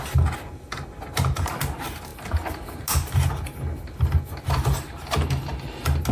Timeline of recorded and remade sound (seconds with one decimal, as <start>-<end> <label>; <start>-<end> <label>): 0.0-6.1 recorded